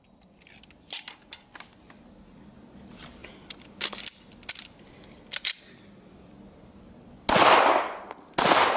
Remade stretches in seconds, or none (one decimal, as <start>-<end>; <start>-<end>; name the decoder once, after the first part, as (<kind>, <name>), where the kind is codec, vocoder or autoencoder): none